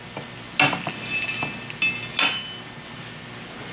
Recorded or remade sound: recorded